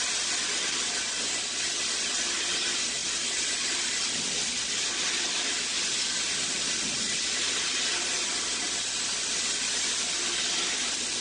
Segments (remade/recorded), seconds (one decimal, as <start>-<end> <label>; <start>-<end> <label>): 0.0-11.2 recorded